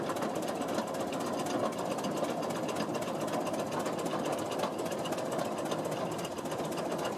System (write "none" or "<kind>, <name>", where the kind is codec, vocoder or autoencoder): none